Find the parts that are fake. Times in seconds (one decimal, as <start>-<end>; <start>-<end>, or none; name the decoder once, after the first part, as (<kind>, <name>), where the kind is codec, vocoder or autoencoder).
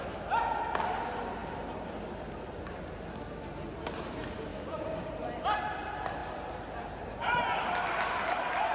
4.5-5.1 (codec, DAC)